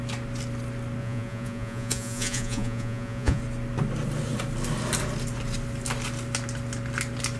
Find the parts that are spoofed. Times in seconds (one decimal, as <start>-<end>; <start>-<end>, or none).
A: 1.0-3.4